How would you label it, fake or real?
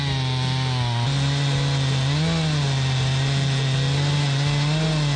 real